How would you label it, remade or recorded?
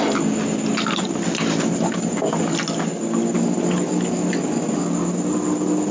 recorded